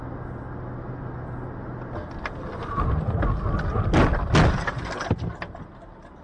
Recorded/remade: recorded